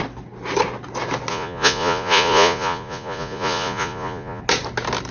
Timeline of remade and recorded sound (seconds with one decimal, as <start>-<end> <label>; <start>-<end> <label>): 0.0-1.3 recorded; 1.3-4.4 remade; 4.4-5.1 recorded